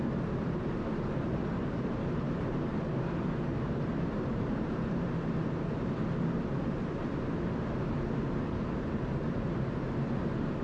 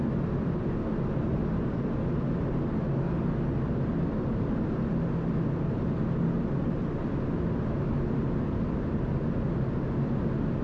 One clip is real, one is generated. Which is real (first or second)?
second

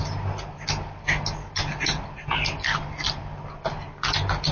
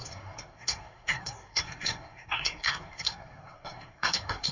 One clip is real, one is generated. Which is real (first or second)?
first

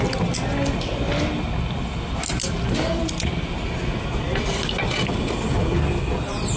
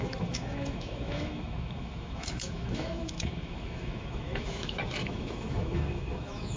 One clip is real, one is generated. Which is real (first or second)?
first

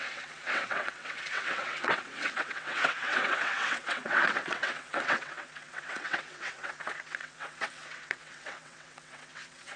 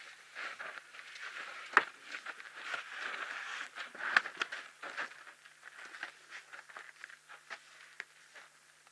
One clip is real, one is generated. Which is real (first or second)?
second